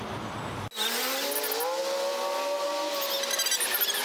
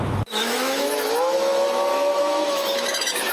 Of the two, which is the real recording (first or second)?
first